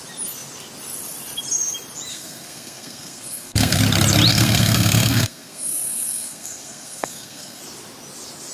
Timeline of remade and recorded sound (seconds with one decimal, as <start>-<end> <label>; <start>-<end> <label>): 0.0-2.1 recorded; 2.1-3.8 remade; 3.8-4.3 recorded; 4.3-7.6 remade; 7.6-8.5 recorded